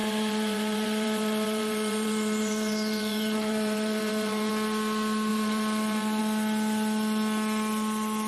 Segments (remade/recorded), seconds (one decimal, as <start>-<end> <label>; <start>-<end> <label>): 0.0-4.5 remade; 4.5-5.3 recorded; 5.3-6.2 remade; 6.2-8.3 recorded